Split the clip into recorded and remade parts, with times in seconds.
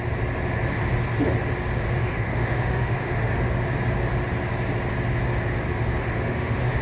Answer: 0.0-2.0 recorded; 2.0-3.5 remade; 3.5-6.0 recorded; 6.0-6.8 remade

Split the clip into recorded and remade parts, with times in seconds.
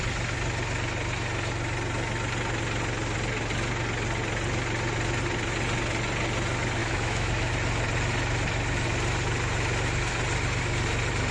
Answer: 0.0-6.8 recorded; 6.8-7.5 remade; 7.5-11.3 recorded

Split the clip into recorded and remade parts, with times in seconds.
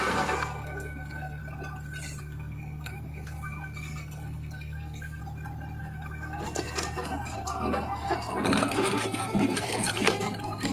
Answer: 0.0-1.4 remade; 1.4-2.2 recorded; 2.2-5.2 remade; 5.2-5.8 recorded; 5.8-10.7 remade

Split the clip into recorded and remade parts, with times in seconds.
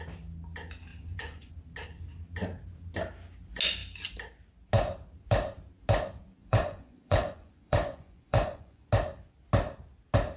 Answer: 0.0-0.9 recorded; 0.9-1.5 remade; 1.5-6.4 recorded; 6.4-8.9 remade; 8.9-10.4 recorded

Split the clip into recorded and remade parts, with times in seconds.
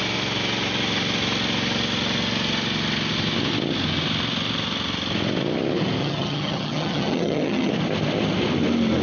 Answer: 0.0-6.0 recorded; 6.0-7.7 remade; 7.7-9.0 recorded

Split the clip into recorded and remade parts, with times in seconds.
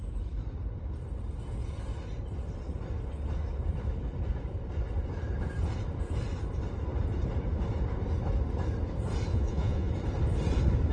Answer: 0.0-9.3 recorded; 9.3-9.9 remade; 9.9-10.9 recorded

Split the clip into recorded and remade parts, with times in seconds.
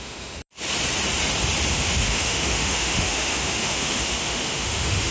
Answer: 0.0-0.4 remade; 0.4-1.7 recorded; 1.7-5.1 remade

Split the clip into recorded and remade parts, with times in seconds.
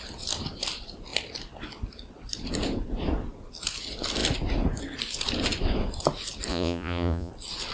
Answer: 0.0-6.5 recorded; 6.5-7.3 remade; 7.3-7.7 recorded